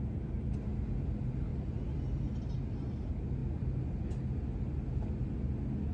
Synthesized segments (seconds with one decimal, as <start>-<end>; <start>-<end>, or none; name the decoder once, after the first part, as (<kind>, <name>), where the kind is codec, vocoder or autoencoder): none